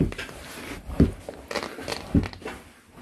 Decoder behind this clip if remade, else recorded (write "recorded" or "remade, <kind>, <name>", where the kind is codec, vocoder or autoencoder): recorded